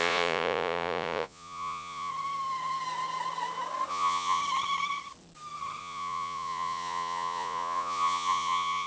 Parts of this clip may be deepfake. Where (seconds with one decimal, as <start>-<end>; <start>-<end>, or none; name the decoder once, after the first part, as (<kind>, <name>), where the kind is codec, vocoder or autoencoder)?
0.0-2.1 (vocoder, Vocos); 3.9-4.4; 5.8-8.9